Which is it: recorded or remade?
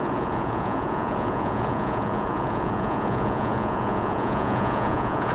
remade